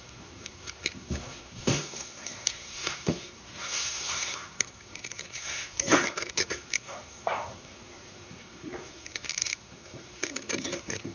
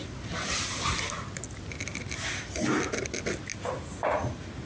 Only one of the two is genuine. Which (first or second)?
second